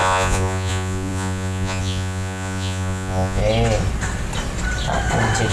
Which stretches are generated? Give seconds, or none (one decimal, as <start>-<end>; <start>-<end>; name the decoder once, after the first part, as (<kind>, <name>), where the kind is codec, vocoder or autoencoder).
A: 0.0-3.4 (vocoder, Vocos)